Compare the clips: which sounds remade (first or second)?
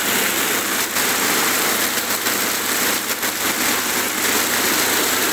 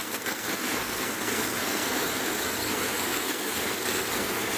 second